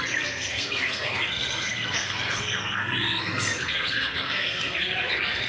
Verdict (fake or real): fake